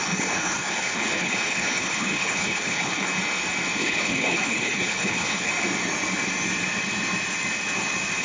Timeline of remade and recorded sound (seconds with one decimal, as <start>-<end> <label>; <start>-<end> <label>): 0.0-3.1 remade; 3.1-3.8 recorded; 3.8-5.5 remade; 5.5-8.2 recorded